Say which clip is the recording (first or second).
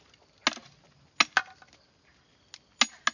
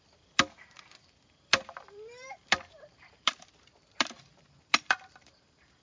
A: first